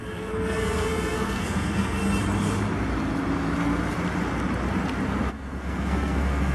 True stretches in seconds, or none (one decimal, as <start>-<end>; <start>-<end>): 2.0-5.3